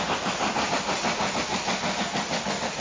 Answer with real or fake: real